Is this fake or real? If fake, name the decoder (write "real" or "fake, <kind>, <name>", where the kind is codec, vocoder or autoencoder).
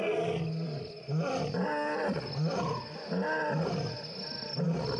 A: real